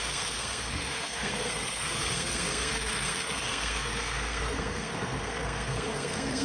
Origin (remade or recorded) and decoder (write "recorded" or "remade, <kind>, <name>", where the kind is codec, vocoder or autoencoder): remade, codec, SNAC